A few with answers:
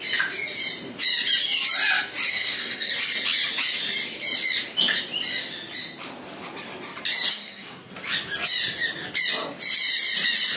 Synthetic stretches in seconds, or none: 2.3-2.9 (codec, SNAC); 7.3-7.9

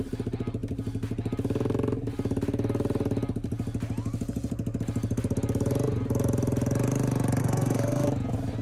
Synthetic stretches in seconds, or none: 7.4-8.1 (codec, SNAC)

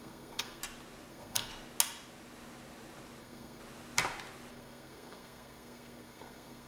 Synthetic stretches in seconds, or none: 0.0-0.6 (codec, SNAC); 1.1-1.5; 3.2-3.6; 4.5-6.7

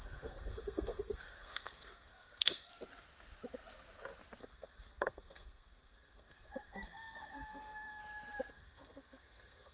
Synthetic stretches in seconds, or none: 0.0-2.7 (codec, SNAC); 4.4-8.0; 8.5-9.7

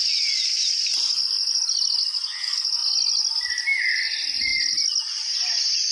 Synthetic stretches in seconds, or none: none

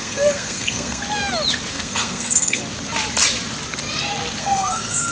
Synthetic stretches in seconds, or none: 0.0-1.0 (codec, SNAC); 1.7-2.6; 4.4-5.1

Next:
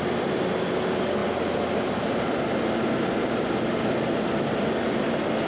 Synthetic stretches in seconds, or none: none

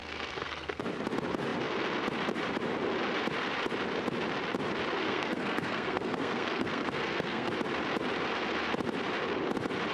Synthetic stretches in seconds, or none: 0.0-0.8 (codec, SNAC); 5.0-7.5